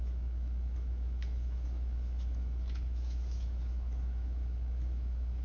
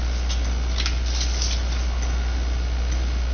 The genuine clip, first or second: second